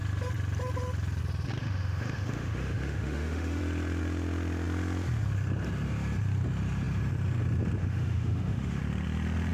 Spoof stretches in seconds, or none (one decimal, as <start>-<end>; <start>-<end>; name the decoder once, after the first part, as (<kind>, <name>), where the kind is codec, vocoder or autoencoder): 1.6-3.6 (autoencoder, DAC-VAE); 7.8-8.8